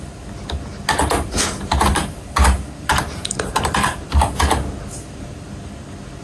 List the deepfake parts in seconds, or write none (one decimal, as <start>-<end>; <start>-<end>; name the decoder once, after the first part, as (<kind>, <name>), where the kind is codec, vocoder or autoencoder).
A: 1.0-4.4 (vocoder, BigVGAN v2)